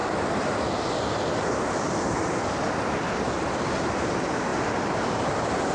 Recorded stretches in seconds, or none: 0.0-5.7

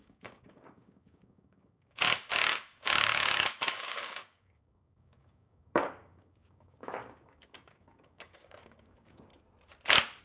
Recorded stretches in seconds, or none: 9.3-10.2

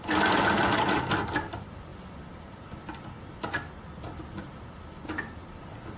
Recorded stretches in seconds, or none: 0.0-6.0

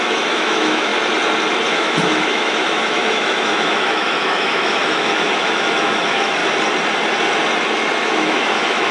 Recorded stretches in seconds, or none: 0.9-1.7; 6.4-8.0

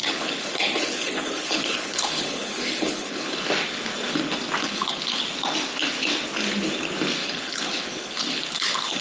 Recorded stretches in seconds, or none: 3.5-4.6; 5.2-7.2; 8.4-9.0

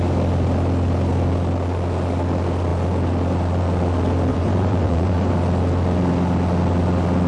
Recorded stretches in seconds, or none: 0.0-4.3; 5.3-7.3